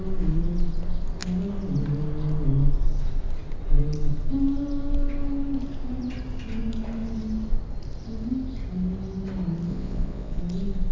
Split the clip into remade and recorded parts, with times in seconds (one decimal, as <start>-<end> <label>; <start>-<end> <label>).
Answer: 0.0-9.7 recorded; 9.7-10.4 remade; 10.4-10.9 recorded